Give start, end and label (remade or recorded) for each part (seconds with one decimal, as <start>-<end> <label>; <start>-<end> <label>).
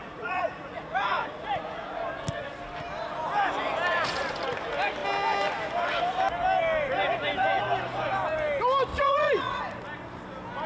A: 0.0-2.0 remade; 2.0-8.9 recorded; 8.9-9.6 remade; 9.6-10.7 recorded